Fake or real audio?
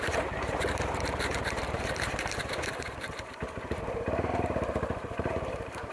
fake